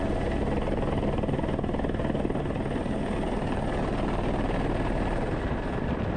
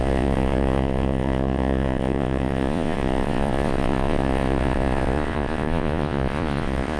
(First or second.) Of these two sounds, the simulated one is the second